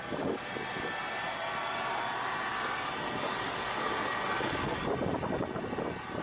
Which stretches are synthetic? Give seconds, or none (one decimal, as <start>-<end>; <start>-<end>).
2.5-4.9